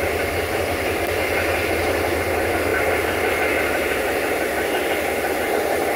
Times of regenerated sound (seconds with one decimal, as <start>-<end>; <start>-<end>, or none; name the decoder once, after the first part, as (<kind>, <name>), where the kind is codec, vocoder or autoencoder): none